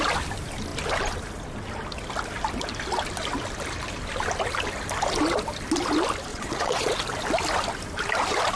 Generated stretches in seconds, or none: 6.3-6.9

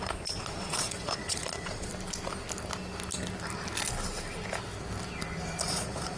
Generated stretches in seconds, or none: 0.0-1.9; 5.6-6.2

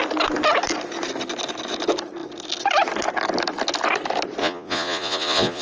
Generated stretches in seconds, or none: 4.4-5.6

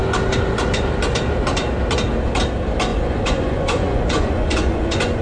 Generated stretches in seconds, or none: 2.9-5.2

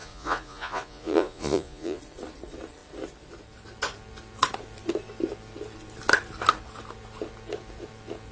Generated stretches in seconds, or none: 0.0-2.0